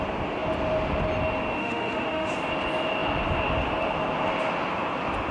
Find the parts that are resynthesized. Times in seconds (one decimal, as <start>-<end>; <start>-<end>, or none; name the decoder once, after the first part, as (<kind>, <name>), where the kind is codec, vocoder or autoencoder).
1.6-2.3 (autoencoder, DAC-VAE)